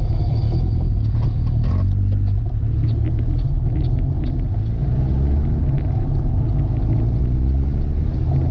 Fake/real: real